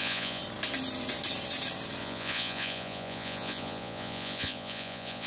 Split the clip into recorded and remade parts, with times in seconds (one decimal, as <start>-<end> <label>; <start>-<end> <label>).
0.0-0.4 remade; 0.4-2.0 recorded; 2.0-5.3 remade